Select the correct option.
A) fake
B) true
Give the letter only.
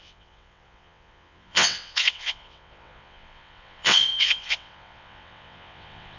A